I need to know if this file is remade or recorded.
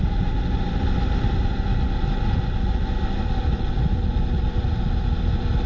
recorded